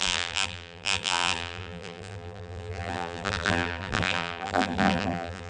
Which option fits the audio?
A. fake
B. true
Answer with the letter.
A